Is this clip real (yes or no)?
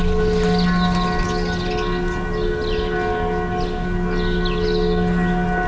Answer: yes